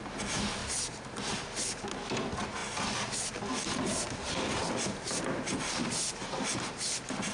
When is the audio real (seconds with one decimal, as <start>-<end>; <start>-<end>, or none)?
0.0-7.3